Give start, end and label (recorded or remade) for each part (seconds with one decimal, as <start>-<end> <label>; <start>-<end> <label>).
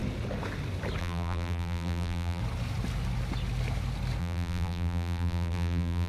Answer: 0.0-1.0 recorded; 1.0-2.4 remade; 2.4-4.2 recorded; 4.2-6.1 remade